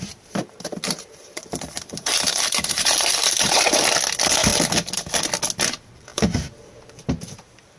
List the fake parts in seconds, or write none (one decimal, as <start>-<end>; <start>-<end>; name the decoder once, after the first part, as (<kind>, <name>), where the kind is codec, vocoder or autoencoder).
0.4-3.9 (vocoder, BigVGAN v2); 6.1-7.8